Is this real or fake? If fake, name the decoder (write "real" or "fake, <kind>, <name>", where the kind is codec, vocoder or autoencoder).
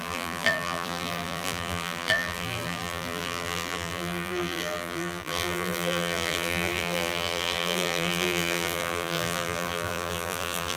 fake, vocoder, BigVGAN v2